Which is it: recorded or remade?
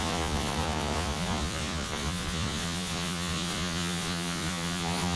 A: remade